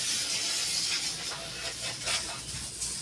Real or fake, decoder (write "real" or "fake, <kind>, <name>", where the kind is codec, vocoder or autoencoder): real